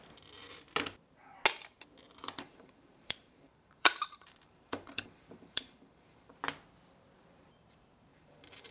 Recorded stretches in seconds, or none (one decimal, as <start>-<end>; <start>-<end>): 0.0-2.2; 6.3-8.1